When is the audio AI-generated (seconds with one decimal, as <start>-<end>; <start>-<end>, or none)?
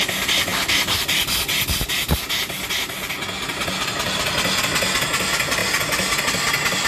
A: none